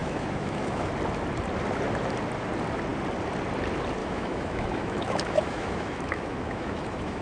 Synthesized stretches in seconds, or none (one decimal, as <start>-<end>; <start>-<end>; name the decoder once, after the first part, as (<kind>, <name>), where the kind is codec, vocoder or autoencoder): 0.0-0.9 (autoencoder, DAC-VAE); 4.0-7.2